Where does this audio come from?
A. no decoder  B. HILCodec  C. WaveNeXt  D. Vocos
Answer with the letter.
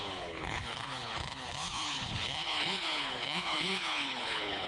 B